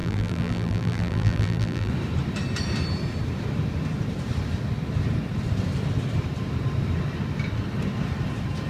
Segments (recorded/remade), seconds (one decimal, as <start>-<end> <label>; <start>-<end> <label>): 0.0-1.9 remade; 1.9-8.7 recorded